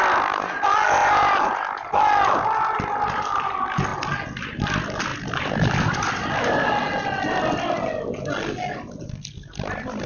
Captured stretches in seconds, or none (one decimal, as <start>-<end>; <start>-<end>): 0.0-10.1

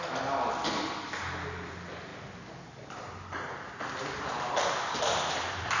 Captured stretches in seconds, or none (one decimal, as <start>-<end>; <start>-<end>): 0.0-5.8

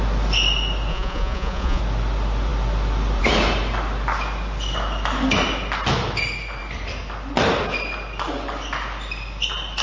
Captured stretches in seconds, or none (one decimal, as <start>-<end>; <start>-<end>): 0.0-0.9; 1.8-9.8

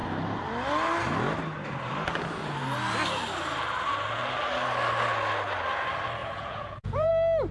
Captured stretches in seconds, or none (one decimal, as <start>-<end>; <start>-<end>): 0.0-6.2; 7.1-7.5

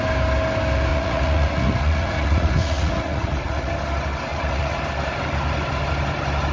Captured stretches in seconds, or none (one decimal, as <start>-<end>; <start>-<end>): 0.0-0.9; 3.7-4.3; 4.8-6.5

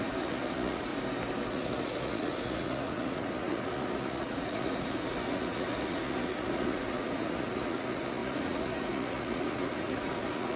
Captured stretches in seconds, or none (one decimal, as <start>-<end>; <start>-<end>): 0.9-1.5

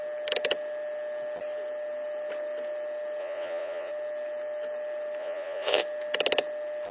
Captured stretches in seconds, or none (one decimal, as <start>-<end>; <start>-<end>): 0.0-3.2; 3.9-5.2; 5.8-6.9

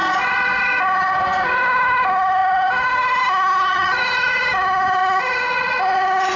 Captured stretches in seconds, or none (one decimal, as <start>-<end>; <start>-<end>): 0.0-3.7; 4.4-5.0; 5.8-6.4